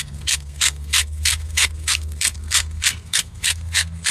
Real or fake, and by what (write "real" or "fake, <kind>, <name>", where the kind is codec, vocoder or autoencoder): fake, codec, SNAC